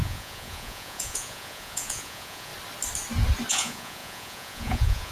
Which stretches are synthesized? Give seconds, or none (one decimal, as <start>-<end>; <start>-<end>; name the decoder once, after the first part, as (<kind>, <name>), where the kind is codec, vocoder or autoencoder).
0.0-2.5 (vocoder, Vocos); 3.5-5.1